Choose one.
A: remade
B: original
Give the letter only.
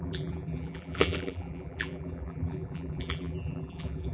A